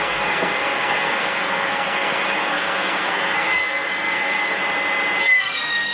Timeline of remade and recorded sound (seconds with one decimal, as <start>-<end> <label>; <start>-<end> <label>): 0.0-4.6 remade; 4.6-5.2 recorded; 5.2-5.9 remade